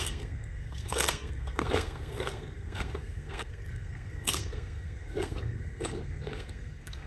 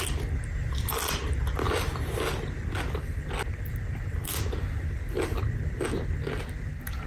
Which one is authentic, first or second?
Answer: second